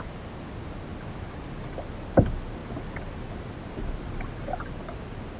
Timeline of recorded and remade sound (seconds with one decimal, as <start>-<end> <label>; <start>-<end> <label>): 0.0-5.4 recorded